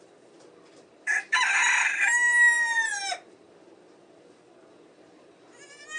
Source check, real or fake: fake